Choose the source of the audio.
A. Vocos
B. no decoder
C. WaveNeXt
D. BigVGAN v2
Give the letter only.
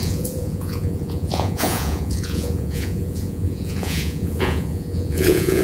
A